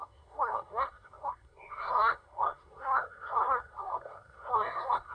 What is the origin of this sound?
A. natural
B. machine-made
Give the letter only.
B